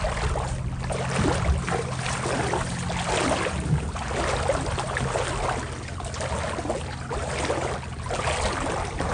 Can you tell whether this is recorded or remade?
recorded